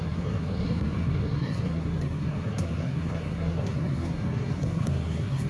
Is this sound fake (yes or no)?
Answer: yes